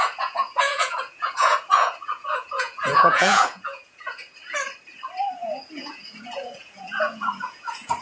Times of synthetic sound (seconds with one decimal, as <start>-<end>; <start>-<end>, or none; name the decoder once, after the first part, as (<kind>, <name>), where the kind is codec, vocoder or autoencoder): 0.0-4.4 (vocoder, Vocos); 5.3-8.0